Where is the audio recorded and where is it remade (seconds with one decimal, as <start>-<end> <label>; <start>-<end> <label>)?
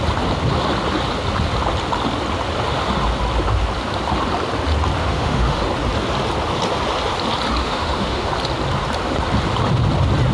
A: 0.0-5.0 recorded; 5.0-5.6 remade; 5.6-7.6 recorded; 7.6-8.3 remade; 8.3-10.3 recorded